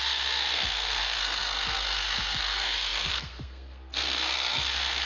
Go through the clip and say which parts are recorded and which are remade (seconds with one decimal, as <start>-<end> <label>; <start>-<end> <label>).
0.0-5.1 remade